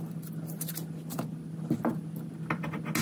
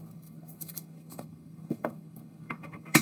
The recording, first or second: first